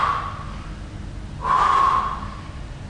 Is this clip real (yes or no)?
yes